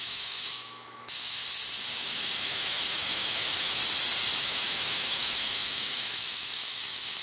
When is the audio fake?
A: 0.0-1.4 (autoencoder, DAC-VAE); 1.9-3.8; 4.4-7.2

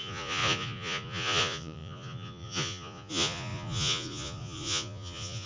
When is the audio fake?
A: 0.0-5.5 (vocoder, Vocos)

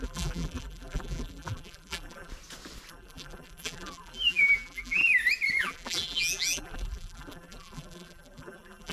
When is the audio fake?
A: 0.0-2.3 (vocoder, BigVGAN v2); 2.9-5.0; 5.6-8.9

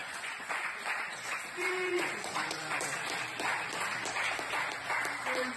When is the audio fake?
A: 0.0-2.6 (vocoder, Vocos)

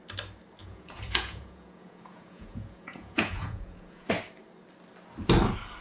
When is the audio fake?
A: 0.6-4.1 (vocoder, Vocos)